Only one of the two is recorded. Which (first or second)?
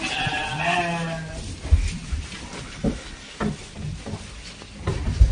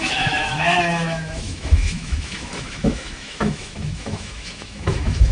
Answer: first